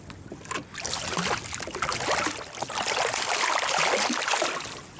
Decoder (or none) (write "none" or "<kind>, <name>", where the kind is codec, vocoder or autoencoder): none